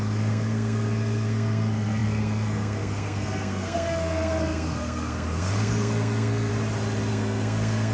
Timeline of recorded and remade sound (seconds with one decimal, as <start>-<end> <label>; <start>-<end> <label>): 0.0-6.5 remade; 6.5-7.1 recorded; 7.1-7.9 remade